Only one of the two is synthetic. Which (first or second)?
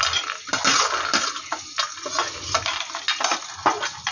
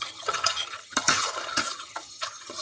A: second